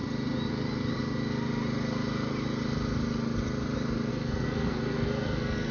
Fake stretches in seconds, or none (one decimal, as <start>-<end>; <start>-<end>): 4.1-5.7